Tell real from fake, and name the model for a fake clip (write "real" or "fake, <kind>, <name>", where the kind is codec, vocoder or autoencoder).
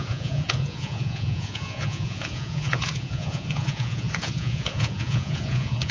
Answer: fake, vocoder, Vocos